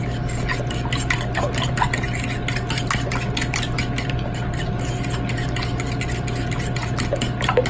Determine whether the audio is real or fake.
real